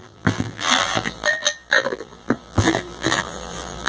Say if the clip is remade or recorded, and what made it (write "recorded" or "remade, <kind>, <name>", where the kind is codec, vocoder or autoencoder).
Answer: remade, vocoder, BigVGAN v2